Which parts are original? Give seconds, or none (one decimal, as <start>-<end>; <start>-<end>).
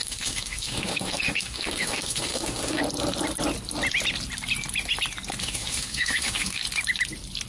2.8-5.4; 6.6-7.5